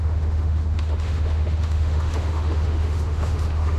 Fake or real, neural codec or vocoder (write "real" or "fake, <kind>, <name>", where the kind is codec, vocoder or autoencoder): fake, autoencoder, DAC-VAE